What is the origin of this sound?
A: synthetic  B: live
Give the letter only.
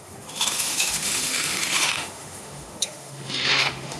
A